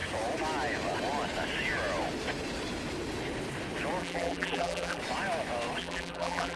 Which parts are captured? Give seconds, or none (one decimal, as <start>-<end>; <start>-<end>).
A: 0.0-4.0; 5.0-5.8